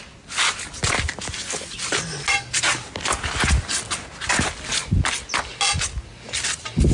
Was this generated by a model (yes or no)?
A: no